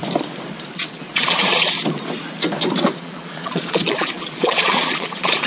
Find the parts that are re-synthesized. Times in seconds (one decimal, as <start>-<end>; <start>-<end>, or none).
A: 0.7-1.8; 2.8-5.5